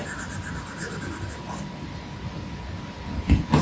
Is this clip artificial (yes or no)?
no